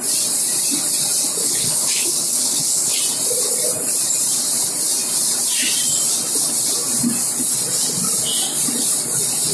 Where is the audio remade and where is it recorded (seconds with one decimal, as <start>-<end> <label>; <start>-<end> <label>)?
0.0-1.4 recorded; 1.4-3.0 remade; 3.0-9.5 recorded